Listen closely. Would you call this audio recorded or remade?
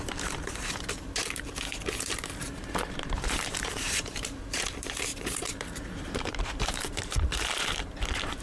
remade